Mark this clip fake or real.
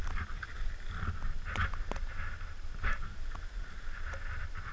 real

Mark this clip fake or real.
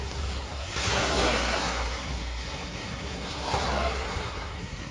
fake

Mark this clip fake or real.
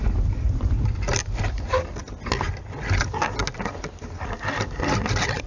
real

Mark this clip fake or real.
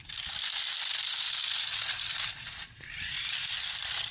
real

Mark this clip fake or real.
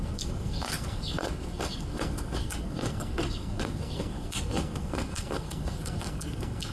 fake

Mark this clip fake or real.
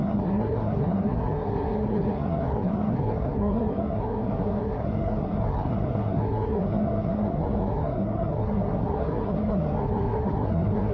fake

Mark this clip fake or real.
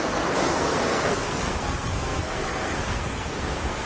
fake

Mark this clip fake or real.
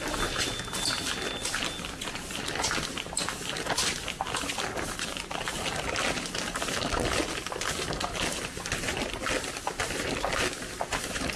real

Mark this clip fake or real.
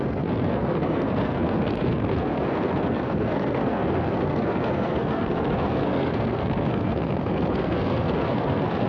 fake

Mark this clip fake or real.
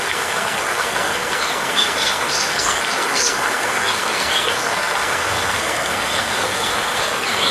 fake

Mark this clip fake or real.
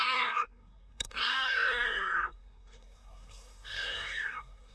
fake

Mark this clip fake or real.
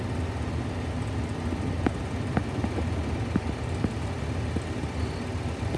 real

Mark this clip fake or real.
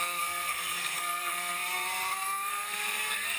fake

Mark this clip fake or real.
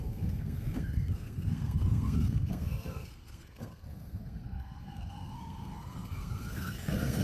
fake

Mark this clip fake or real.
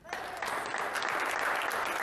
real